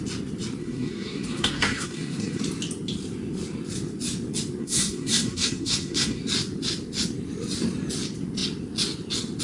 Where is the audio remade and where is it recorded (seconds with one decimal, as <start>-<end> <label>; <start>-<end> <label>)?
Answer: 0.0-0.6 recorded; 0.6-2.4 remade; 2.4-4.6 recorded; 4.6-6.2 remade; 6.2-9.4 recorded